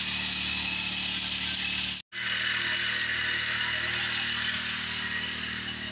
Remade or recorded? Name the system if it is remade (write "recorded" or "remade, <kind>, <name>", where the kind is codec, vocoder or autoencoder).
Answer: recorded